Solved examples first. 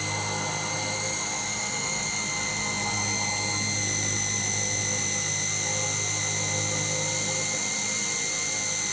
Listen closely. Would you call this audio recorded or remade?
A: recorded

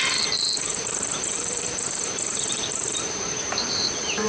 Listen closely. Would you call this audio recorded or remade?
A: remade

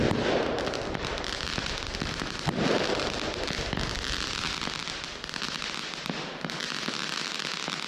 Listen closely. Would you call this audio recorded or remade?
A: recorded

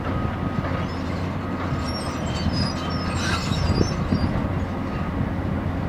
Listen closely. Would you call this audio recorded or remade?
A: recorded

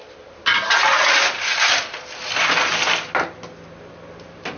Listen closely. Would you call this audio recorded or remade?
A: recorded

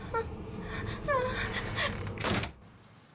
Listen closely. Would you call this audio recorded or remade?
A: remade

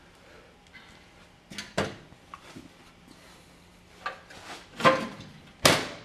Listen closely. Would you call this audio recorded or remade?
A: recorded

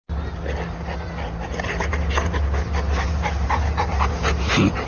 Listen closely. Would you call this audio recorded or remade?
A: recorded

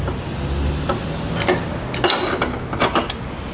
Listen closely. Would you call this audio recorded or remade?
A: recorded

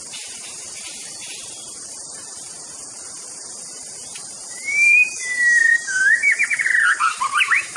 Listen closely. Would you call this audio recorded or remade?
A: remade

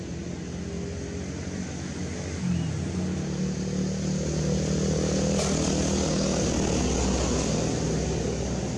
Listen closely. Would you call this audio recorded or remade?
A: recorded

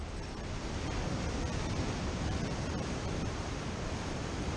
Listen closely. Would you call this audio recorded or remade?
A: remade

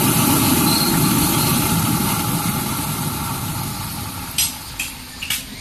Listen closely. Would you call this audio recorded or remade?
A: recorded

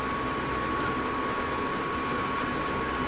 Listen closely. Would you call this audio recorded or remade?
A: recorded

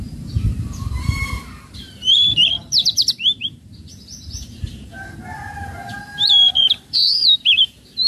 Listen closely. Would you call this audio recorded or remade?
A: remade